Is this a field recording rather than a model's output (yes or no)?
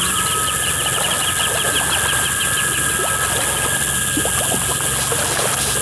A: yes